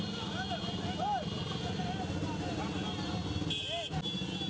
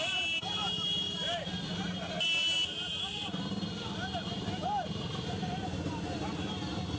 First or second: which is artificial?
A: second